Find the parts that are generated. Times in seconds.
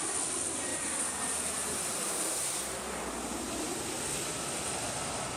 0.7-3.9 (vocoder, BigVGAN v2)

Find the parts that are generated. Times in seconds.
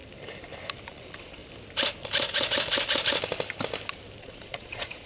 0.9-1.4 (vocoder, Vocos); 4.2-5.1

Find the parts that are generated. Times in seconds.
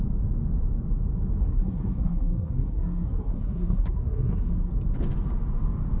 1.4-4.7 (codec, SNAC)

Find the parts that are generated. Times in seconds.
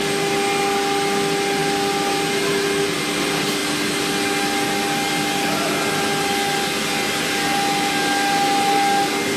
none